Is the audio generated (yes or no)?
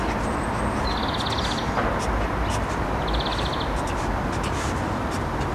no